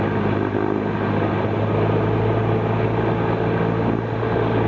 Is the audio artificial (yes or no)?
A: no